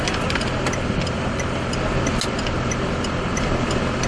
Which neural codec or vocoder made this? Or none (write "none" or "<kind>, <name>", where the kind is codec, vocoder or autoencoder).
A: none